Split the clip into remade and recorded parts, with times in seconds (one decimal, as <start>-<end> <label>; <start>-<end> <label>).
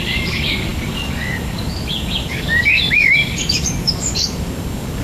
0.0-5.0 remade